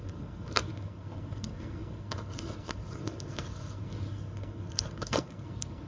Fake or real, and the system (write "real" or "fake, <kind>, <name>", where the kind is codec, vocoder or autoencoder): fake, codec, SNAC